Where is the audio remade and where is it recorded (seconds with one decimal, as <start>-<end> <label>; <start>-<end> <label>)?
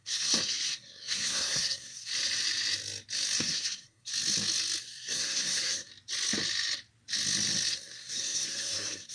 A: 0.0-2.1 remade; 2.1-3.4 recorded; 3.4-4.1 remade; 4.1-4.8 recorded; 4.8-5.9 remade; 5.9-7.7 recorded; 7.7-9.1 remade